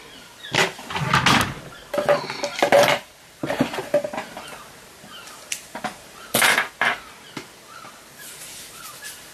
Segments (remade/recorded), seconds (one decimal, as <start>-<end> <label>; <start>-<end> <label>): 0.0-2.6 recorded; 2.6-7.1 remade; 7.1-9.3 recorded